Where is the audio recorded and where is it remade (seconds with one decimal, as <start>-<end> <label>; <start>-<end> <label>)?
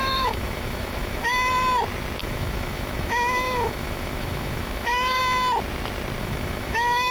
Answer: 0.0-1.3 remade; 1.3-2.2 recorded; 2.2-5.2 remade; 5.2-6.2 recorded; 6.2-7.1 remade